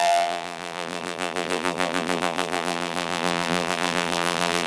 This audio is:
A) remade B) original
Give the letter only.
A